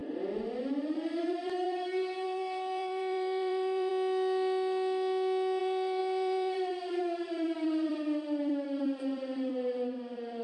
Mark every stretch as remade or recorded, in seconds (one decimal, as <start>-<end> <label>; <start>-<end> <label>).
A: 0.0-0.7 recorded; 0.7-3.9 remade; 3.9-5.6 recorded; 5.6-10.4 remade